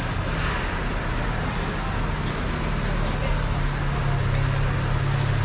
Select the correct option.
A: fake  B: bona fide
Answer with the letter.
B